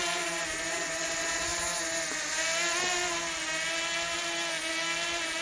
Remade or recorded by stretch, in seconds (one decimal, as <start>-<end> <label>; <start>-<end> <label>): 0.0-5.4 recorded